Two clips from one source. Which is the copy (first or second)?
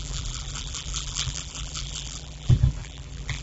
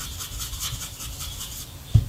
first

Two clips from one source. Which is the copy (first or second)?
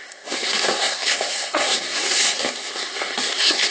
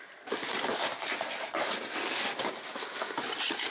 first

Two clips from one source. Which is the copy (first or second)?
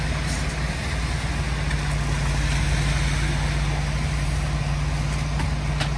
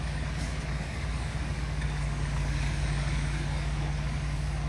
second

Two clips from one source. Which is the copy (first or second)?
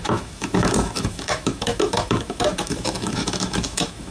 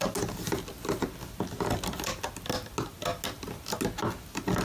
first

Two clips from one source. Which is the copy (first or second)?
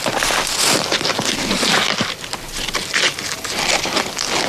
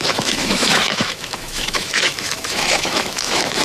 second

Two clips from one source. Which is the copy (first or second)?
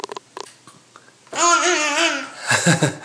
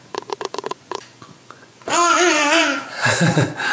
second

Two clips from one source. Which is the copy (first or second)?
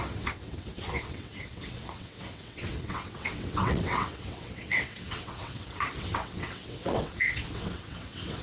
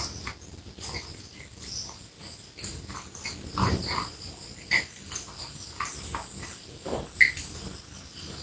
first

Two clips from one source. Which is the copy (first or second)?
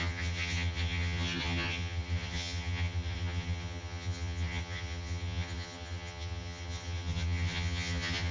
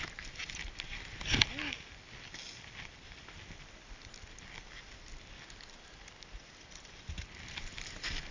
first